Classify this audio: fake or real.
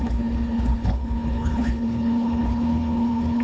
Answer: fake